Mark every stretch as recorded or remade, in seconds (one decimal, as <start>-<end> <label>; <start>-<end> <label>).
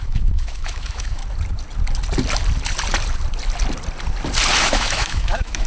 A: 0.0-1.2 remade; 1.2-4.6 recorded; 4.6-5.7 remade